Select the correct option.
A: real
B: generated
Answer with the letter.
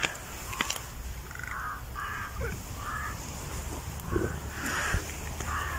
A